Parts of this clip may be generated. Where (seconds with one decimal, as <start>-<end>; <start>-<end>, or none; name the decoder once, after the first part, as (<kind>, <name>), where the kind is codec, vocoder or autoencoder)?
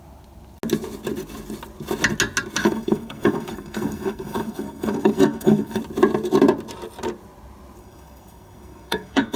2.6-5.8 (codec, SNAC); 7.8-9.4